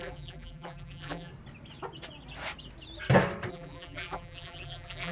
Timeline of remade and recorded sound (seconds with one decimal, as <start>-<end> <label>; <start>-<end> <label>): 0.0-1.3 remade; 1.3-3.5 recorded; 3.5-5.1 remade

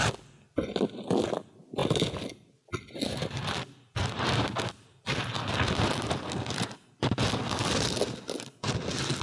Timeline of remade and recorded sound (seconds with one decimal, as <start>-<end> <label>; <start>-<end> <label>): 0.0-9.2 recorded

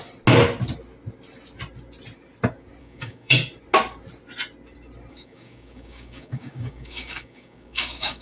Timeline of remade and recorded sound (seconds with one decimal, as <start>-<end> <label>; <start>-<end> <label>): 0.0-2.8 recorded; 2.8-3.4 remade; 3.4-5.1 recorded; 5.1-8.2 remade

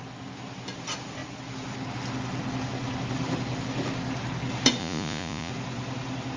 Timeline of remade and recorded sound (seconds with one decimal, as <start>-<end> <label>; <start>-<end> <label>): 0.0-4.8 recorded; 4.8-5.5 remade; 5.5-6.4 recorded

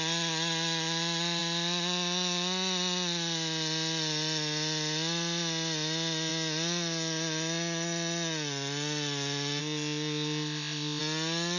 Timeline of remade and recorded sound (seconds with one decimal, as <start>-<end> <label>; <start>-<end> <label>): 0.0-9.6 recorded; 9.6-11.0 remade; 11.0-11.6 recorded

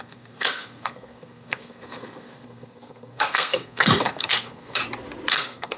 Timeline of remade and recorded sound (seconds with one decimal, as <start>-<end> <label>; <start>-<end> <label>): 0.0-4.8 remade; 4.8-5.3 recorded; 5.3-5.8 remade

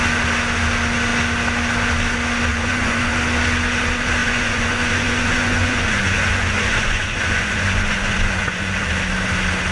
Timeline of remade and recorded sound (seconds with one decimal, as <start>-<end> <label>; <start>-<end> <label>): 0.0-2.5 recorded; 2.5-3.1 remade; 3.1-4.2 recorded; 4.2-8.8 remade; 8.8-9.7 recorded